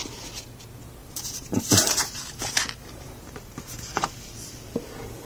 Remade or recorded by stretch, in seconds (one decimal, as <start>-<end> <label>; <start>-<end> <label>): 0.0-1.0 recorded; 1.0-4.1 remade; 4.1-5.2 recorded